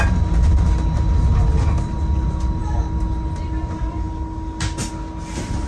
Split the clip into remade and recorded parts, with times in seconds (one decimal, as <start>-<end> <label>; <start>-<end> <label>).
0.0-5.7 recorded